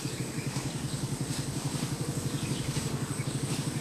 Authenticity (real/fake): fake